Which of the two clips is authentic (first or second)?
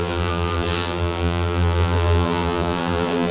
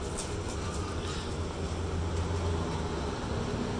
second